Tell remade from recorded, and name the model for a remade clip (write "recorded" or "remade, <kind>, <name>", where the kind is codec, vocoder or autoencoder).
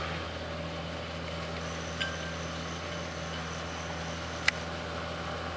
recorded